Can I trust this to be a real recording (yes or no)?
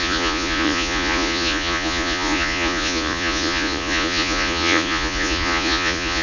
no